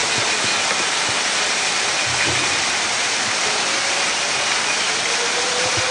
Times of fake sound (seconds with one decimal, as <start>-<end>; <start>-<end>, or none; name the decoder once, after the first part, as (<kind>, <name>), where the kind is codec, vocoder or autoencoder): none